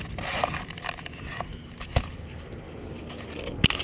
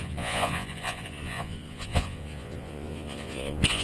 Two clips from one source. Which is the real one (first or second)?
first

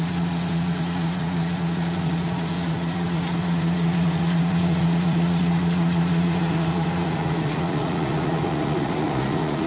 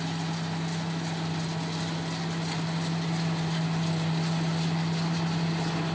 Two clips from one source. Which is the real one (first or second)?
second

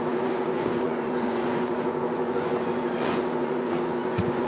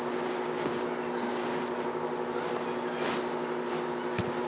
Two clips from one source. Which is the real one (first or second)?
second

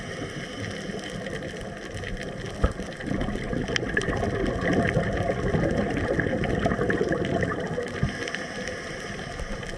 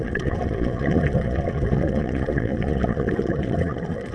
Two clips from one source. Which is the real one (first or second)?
first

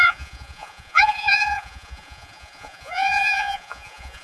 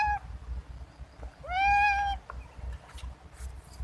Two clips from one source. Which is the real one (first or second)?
second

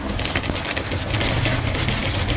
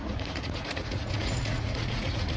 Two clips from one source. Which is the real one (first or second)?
first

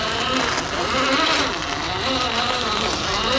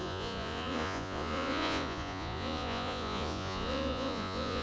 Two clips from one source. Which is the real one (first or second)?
first